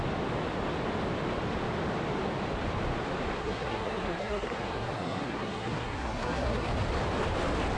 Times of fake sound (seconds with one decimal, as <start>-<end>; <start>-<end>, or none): 3.4-6.7